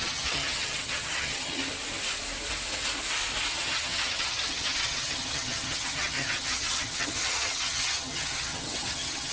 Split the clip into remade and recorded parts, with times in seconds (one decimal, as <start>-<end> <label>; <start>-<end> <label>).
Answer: 0.0-1.6 remade; 1.6-3.5 recorded; 3.5-9.3 remade